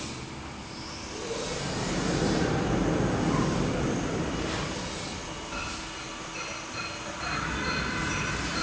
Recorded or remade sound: recorded